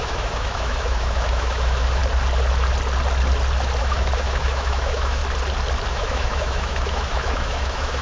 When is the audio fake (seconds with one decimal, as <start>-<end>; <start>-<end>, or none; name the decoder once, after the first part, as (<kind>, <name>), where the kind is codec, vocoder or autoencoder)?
0.0-2.0 (autoencoder, DAC-VAE); 3.8-5.2; 5.9-8.0